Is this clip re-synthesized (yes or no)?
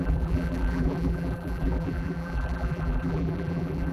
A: yes